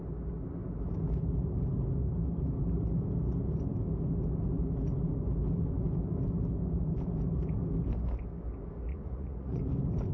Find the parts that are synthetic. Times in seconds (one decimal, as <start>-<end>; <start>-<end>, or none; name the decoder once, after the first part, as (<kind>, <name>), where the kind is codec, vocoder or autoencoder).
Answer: 8.9-9.6 (vocoder, Vocos)